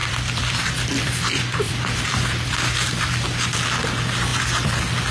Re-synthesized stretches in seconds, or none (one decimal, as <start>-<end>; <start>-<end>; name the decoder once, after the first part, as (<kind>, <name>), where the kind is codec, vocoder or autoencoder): 0.0-3.1 (vocoder, BigVGAN v2)